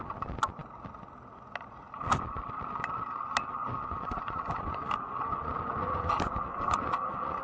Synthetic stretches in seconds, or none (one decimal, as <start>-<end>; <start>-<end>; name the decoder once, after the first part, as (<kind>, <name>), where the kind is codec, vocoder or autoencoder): 3.6-6.1 (vocoder, Vocos); 6.5-7.4